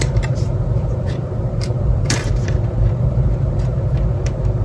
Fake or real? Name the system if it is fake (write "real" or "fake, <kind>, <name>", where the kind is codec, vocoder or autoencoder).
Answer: fake, vocoder, BigVGAN v2